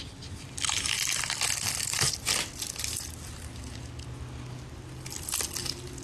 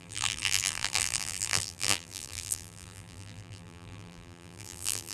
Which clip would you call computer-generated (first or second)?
second